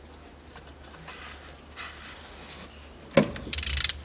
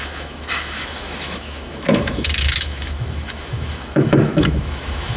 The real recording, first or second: first